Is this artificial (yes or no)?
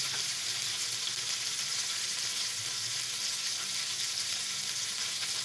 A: no